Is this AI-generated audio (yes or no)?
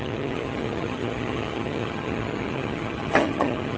yes